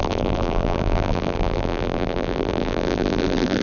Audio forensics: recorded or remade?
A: remade